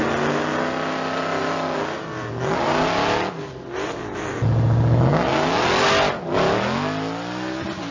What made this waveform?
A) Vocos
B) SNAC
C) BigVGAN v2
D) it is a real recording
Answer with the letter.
D